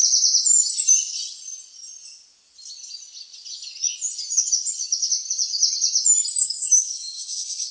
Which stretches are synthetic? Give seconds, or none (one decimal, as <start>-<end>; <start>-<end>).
6.4-7.7